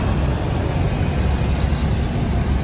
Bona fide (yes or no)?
yes